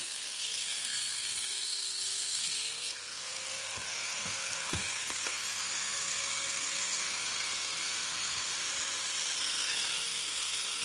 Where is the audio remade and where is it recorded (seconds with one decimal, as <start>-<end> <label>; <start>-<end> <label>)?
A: 0.0-8.5 remade; 8.5-9.4 recorded; 9.4-10.8 remade

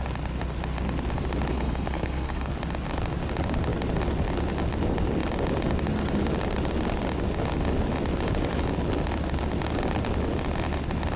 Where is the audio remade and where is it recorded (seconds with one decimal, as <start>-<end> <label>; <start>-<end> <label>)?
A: 0.0-1.5 recorded; 1.5-2.5 remade; 2.5-11.2 recorded